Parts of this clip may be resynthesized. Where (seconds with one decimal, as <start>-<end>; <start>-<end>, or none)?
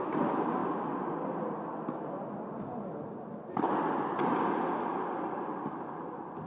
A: none